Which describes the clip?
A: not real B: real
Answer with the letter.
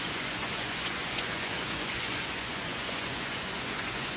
A